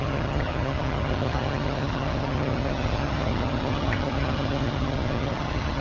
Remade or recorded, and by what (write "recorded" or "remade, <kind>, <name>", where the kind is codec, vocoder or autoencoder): remade, vocoder, HiFi-GAN